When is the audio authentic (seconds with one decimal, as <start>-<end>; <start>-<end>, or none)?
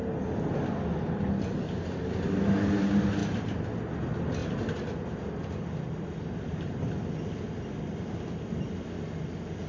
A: 0.0-9.7